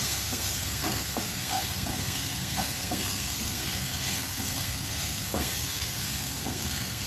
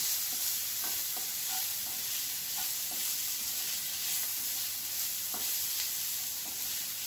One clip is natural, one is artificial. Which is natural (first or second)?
second